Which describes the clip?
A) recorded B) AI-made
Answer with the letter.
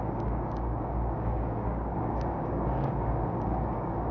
B